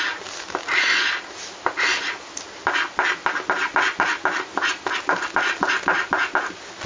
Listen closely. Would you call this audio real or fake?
real